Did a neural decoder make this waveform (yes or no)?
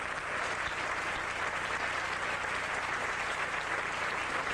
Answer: no